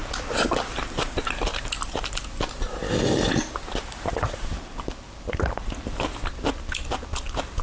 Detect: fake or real real